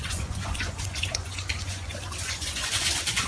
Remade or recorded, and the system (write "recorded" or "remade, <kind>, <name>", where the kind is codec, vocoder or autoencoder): remade, vocoder, Vocos